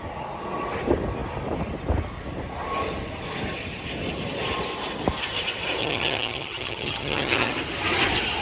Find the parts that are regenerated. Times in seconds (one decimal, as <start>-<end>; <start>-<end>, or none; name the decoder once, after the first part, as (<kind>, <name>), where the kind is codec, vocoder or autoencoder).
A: 5.8-7.5 (vocoder, HiFi-GAN)